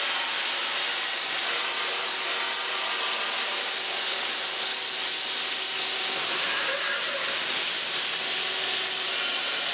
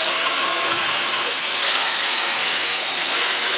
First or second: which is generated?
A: second